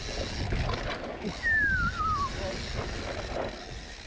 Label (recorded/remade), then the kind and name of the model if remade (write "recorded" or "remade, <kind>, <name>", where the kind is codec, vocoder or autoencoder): recorded